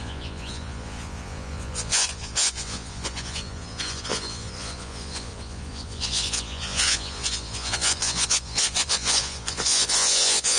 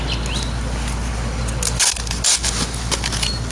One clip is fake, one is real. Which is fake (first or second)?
first